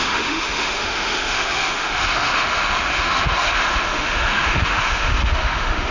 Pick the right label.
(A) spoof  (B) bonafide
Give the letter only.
A